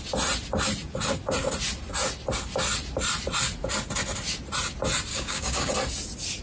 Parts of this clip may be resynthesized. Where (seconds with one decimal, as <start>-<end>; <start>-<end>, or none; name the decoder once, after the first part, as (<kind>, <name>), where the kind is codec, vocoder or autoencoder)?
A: 5.1-5.7 (codec, DAC)